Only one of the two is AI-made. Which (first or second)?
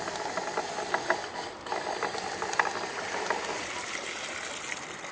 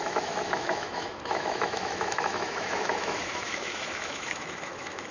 second